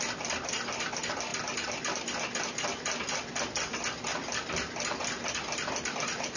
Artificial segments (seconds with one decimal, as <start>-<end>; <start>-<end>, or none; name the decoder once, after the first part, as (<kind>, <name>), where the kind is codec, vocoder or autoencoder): none

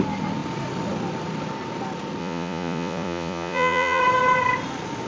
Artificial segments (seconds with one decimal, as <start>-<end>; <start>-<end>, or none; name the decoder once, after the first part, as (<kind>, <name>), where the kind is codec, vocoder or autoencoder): 2.2-4.0 (vocoder, Vocos)